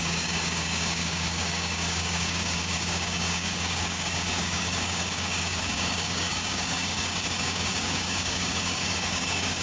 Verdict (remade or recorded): remade